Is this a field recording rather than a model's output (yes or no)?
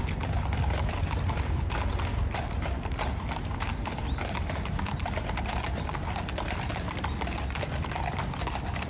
yes